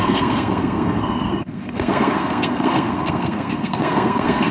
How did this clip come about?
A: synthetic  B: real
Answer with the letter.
A